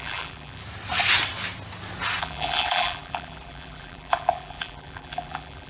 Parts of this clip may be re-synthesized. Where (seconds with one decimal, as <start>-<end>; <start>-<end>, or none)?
0.0-0.6; 2.2-5.7